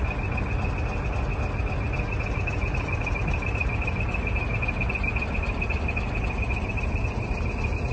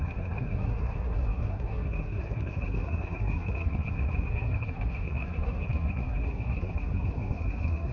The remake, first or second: second